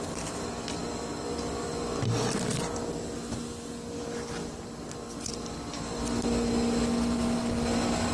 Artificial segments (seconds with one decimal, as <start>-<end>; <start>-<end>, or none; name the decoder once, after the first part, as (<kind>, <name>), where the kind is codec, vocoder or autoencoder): 4.4-6.3 (vocoder, BigVGAN v2)